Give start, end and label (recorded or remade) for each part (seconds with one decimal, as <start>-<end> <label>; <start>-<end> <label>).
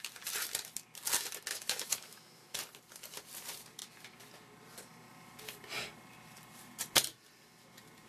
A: 0.0-1.5 recorded; 1.5-2.6 remade; 2.6-8.1 recorded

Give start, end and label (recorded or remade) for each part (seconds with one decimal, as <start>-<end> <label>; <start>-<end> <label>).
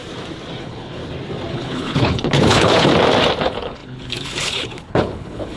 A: 0.0-0.6 recorded; 0.6-1.0 remade; 1.0-1.5 recorded; 1.5-2.9 remade; 2.9-3.4 recorded; 3.4-5.6 remade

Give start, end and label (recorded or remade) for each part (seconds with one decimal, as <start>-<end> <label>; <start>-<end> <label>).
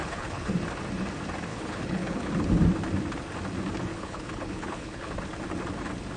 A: 0.0-0.5 remade; 0.5-1.5 recorded; 1.5-2.3 remade; 2.3-3.9 recorded; 3.9-5.1 remade; 5.1-6.2 recorded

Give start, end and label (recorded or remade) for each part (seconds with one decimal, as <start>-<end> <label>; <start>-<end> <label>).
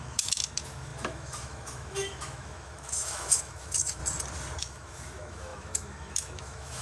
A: 0.0-4.0 remade; 4.0-4.6 recorded; 4.6-6.8 remade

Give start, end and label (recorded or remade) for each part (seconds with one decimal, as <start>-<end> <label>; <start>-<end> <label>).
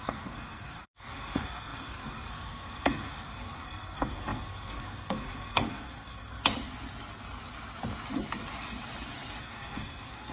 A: 0.0-6.4 remade; 6.4-9.4 recorded; 9.4-10.3 remade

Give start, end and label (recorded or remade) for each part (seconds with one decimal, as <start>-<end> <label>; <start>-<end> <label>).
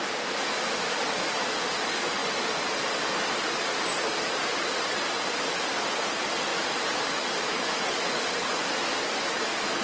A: 0.0-9.8 recorded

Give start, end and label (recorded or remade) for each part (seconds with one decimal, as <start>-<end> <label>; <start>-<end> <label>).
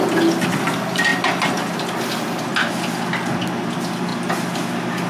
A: 0.0-5.1 recorded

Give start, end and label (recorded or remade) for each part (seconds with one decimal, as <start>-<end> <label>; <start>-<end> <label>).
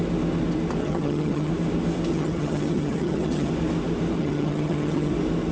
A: 0.0-0.8 recorded; 0.8-1.5 remade; 1.5-2.1 recorded; 2.1-3.5 remade; 3.5-4.2 recorded; 4.2-5.1 remade; 5.1-5.5 recorded